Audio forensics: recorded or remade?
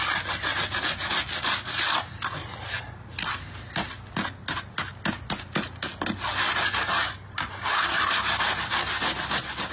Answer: recorded